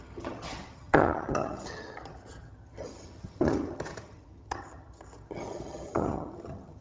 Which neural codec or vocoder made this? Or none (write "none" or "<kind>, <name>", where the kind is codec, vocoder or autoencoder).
vocoder, HiFi-GAN